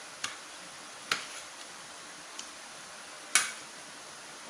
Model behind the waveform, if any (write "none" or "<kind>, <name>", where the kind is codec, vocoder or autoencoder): none